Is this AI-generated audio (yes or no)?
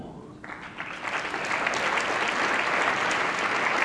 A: no